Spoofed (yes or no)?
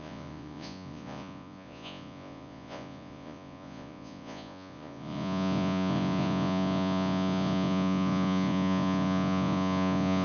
yes